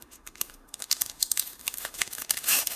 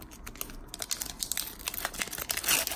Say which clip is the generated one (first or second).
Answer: first